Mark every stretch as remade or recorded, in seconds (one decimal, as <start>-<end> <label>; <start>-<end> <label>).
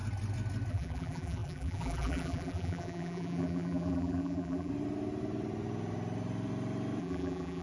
0.0-0.7 recorded; 0.7-4.7 remade; 4.7-7.0 recorded; 7.0-7.6 remade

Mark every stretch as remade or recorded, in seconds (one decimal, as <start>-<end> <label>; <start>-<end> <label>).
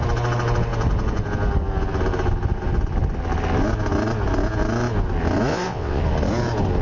0.0-5.5 recorded; 5.5-6.0 remade; 6.0-6.8 recorded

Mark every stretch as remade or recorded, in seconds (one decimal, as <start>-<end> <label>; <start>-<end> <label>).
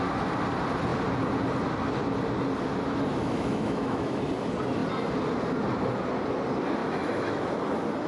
0.0-3.1 recorded; 3.1-4.3 remade; 4.3-6.8 recorded; 6.8-7.4 remade; 7.4-8.1 recorded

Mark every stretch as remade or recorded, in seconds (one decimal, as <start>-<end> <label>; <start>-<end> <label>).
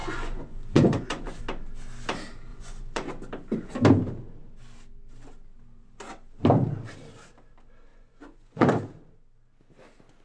0.0-1.4 remade; 1.4-2.5 recorded; 2.5-3.1 remade; 3.1-7.9 recorded; 7.9-8.8 remade; 8.8-10.2 recorded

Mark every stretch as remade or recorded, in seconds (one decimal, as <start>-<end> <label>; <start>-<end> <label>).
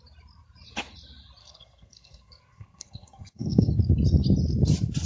0.0-1.4 recorded; 1.4-3.7 remade; 3.7-5.1 recorded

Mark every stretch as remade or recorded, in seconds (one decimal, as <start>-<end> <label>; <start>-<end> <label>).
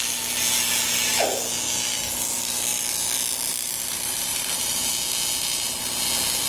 0.0-4.3 recorded; 4.3-4.9 remade; 4.9-6.5 recorded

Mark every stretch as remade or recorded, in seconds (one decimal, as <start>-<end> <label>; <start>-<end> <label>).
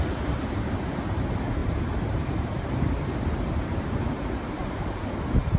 0.0-1.6 recorded; 1.6-5.0 remade; 5.0-5.6 recorded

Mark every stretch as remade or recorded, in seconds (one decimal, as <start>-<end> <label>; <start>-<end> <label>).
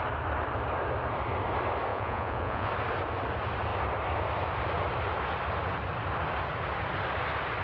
0.0-1.9 recorded; 1.9-2.7 remade; 2.7-7.6 recorded